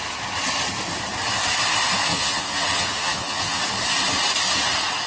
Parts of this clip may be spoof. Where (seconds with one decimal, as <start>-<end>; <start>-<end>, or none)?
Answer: 2.1-3.6

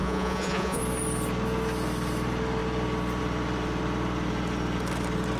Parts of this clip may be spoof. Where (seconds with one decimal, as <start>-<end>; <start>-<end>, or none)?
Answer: 0.0-0.8

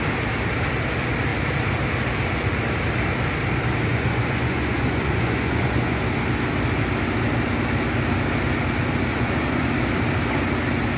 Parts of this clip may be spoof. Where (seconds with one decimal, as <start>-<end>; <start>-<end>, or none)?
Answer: 3.9-6.0; 9.1-9.7

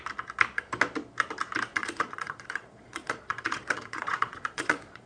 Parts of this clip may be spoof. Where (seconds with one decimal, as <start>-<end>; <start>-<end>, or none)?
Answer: 1.7-5.1

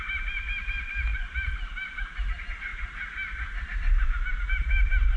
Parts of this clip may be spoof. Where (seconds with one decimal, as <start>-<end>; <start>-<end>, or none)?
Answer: none

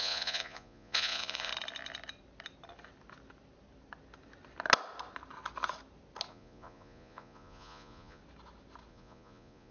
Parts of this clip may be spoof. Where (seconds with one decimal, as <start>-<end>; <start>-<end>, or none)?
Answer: 0.0-1.5; 6.3-8.2; 8.9-9.7

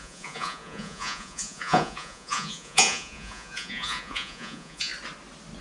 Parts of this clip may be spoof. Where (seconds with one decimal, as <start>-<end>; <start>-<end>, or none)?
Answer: 0.0-4.9

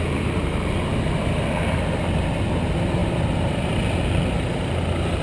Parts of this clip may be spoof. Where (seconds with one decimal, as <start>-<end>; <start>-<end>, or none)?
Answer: none